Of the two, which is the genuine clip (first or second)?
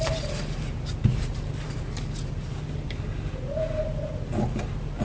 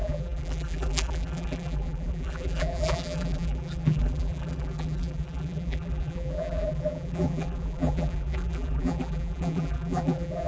first